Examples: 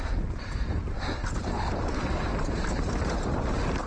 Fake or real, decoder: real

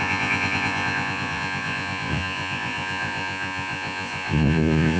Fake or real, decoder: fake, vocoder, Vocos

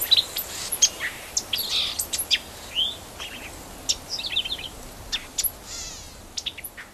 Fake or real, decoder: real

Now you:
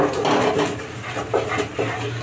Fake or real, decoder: real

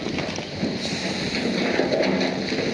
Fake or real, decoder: real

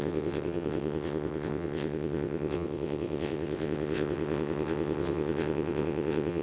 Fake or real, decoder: fake, vocoder, WaveNeXt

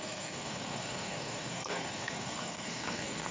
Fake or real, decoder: fake, codec, SNAC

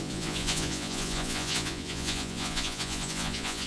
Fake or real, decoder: fake, vocoder, Vocos